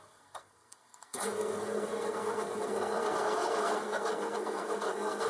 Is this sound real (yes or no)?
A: no